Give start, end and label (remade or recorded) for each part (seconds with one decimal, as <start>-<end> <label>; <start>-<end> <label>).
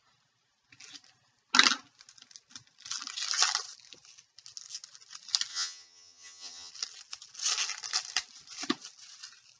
0.0-5.5 recorded; 5.5-6.7 remade; 6.7-9.6 recorded